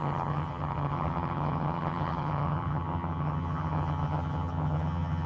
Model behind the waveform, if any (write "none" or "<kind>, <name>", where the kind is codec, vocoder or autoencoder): vocoder, HiFi-GAN